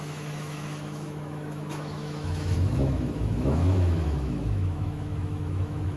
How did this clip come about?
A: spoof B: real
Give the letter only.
A